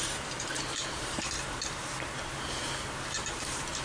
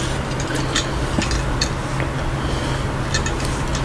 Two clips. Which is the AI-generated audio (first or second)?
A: first